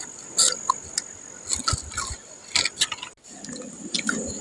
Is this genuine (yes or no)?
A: yes